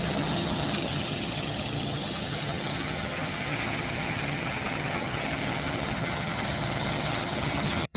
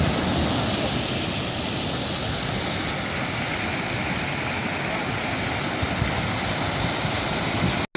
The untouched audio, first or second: second